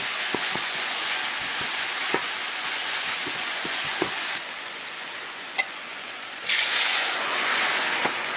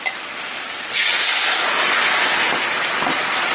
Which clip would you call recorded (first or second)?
second